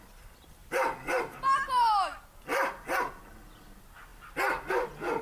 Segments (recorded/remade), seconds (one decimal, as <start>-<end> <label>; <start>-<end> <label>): 0.0-0.6 recorded; 0.6-1.2 remade; 1.2-2.5 recorded; 2.5-3.2 remade; 3.2-5.2 recorded